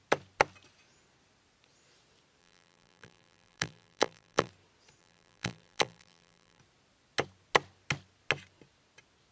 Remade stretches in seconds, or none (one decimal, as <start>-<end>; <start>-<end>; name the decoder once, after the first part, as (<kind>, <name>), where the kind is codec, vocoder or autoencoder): 2.4-4.5 (vocoder, BigVGAN v2); 5.0-6.6